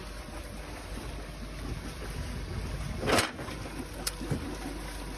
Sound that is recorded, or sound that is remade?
recorded